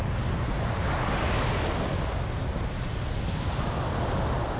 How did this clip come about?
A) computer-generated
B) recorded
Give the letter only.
B